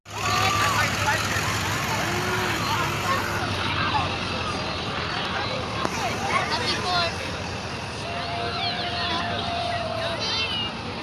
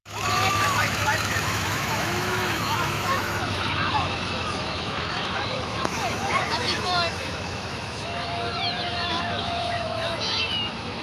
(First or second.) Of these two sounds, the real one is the first